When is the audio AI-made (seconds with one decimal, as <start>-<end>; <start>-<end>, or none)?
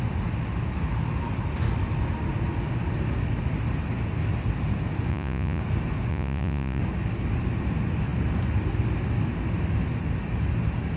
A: 5.1-5.6; 6.1-6.8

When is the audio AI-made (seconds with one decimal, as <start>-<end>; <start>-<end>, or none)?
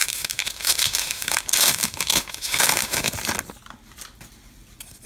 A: 0.0-3.1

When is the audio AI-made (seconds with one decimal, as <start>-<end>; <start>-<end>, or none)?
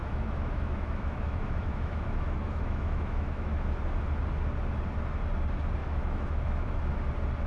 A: 0.0-3.8; 5.8-6.9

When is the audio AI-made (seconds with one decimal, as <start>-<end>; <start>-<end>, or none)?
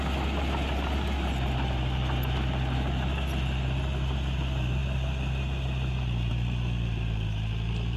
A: none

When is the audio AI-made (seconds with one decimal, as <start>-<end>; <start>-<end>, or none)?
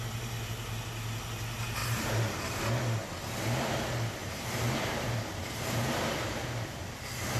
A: 1.8-2.6; 4.2-7.4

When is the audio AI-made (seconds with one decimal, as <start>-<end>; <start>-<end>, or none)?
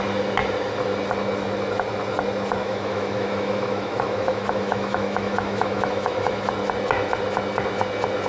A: 2.6-6.5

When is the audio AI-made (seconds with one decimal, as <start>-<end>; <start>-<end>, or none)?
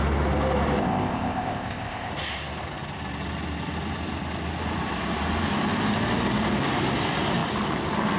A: 0.8-2.1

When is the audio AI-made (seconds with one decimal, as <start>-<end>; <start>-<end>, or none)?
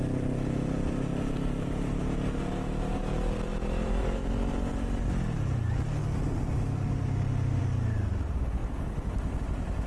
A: 3.5-4.0